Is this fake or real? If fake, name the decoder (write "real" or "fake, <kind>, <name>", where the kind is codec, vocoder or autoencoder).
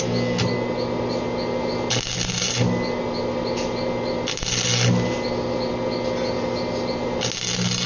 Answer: real